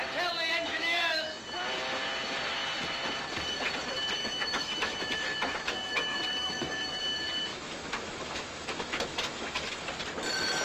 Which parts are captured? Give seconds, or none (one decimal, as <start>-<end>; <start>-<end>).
0.0-0.7; 1.4-4.2; 7.0-7.5; 9.9-10.6